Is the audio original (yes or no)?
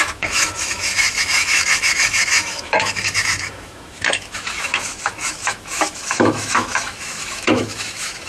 no